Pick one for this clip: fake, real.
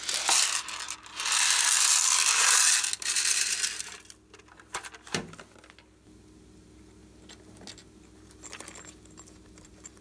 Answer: real